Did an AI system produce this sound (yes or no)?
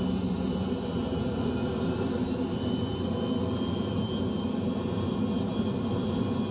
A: no